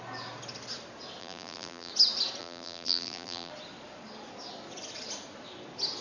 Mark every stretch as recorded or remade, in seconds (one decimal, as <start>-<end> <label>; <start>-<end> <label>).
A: 0.0-1.2 recorded; 1.2-1.9 remade; 1.9-2.4 recorded; 2.4-3.5 remade; 3.5-6.0 recorded